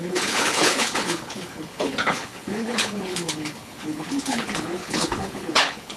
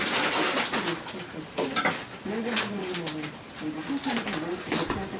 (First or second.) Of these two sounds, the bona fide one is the second